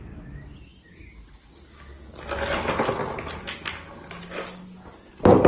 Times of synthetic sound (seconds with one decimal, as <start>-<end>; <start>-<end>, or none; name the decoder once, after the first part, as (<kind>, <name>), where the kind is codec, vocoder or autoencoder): none